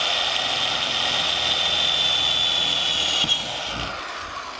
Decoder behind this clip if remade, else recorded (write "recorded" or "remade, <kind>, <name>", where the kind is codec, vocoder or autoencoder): recorded